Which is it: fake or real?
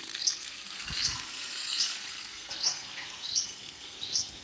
fake